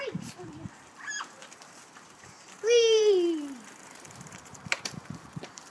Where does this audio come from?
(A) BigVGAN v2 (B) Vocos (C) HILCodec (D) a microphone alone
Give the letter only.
A